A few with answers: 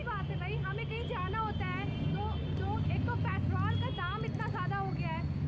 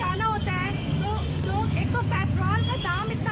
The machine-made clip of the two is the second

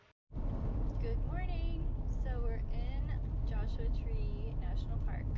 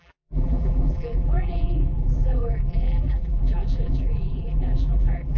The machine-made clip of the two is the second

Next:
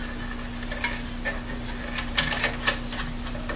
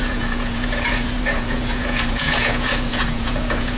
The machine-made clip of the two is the second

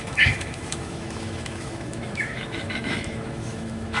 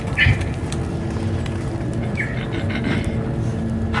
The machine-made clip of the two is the first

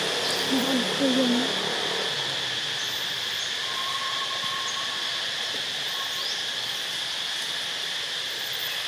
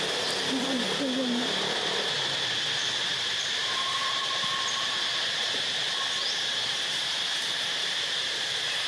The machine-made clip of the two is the second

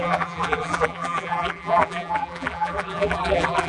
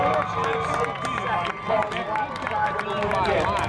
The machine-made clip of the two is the first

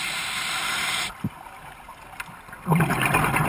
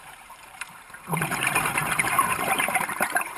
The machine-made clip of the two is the second